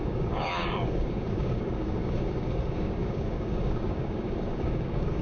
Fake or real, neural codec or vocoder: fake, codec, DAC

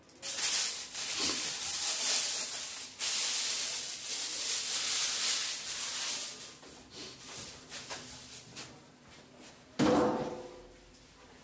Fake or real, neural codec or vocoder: real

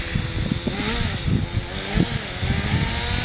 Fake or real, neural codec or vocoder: real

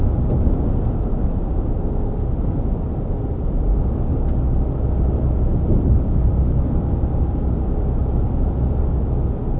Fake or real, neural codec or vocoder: real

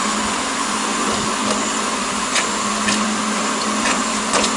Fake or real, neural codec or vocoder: fake, vocoder, Vocos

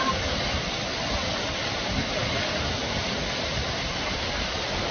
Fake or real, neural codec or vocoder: real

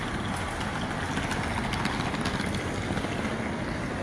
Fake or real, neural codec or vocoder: real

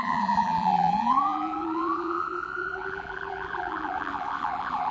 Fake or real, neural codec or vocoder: fake, vocoder, BigVGAN v2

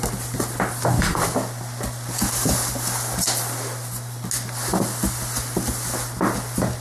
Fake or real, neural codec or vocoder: real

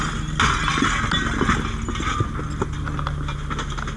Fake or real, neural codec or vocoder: real